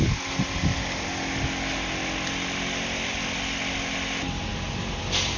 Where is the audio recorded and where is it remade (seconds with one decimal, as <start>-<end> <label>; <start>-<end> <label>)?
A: 0.0-5.4 recorded